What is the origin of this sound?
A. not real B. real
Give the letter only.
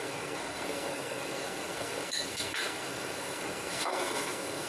A